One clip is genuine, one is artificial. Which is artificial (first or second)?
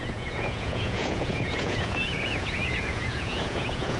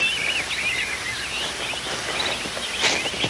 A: first